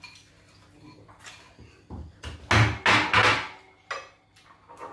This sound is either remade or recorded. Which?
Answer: recorded